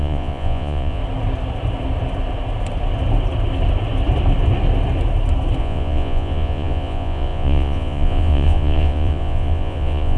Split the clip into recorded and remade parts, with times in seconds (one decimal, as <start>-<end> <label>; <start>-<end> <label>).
0.0-1.0 remade; 1.0-5.6 recorded; 5.6-10.2 remade